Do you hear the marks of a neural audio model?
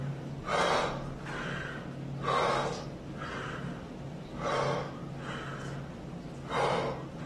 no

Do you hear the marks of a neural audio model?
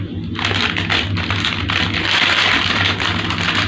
no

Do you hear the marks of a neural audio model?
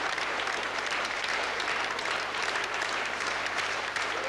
yes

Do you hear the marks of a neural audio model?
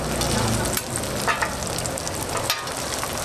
no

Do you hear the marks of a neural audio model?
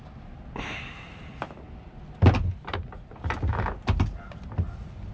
no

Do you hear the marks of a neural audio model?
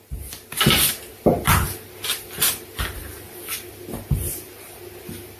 no